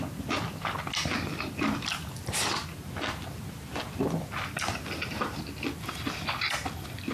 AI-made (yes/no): no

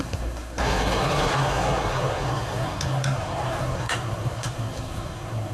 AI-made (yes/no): yes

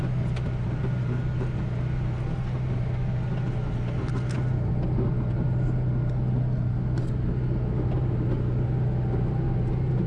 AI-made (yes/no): no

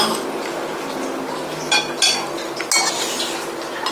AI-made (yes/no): no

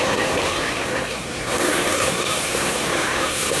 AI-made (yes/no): yes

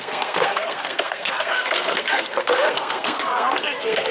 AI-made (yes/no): yes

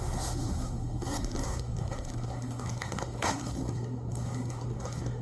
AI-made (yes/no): yes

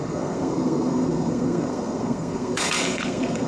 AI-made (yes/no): yes